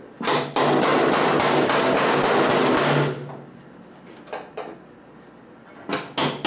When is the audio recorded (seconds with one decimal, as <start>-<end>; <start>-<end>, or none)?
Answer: 0.0-6.5